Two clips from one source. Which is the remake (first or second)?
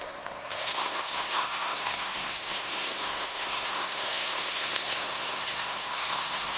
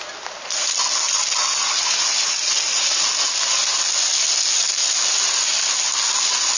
first